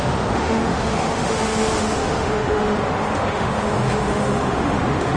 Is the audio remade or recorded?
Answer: remade